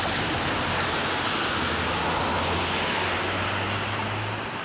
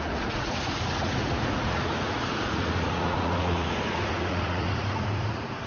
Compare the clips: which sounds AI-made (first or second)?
second